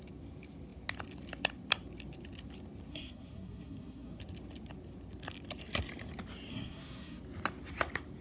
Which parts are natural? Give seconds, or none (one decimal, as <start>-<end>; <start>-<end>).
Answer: 0.0-2.9; 4.2-6.5; 7.2-8.2